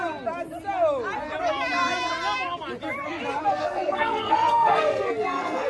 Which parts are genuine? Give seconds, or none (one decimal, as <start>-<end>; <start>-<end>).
0.0-3.4